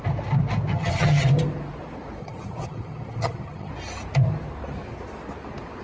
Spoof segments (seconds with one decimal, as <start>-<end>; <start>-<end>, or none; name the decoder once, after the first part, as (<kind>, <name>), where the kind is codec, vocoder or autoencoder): 0.7-1.2 (vocoder, HiFi-GAN); 2.2-3.7